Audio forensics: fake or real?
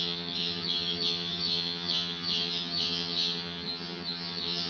fake